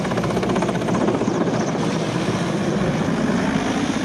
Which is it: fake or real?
real